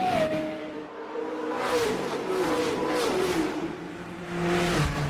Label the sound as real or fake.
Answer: fake